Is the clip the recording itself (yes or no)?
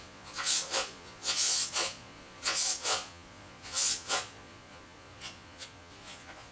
no